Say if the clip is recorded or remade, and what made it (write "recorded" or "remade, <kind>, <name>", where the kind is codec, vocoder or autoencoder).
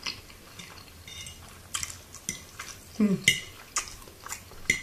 recorded